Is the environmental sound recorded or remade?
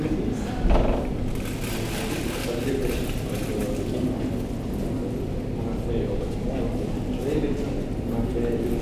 recorded